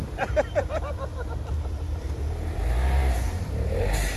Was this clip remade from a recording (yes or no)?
yes